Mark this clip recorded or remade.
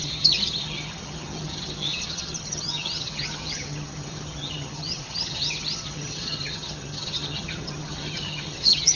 remade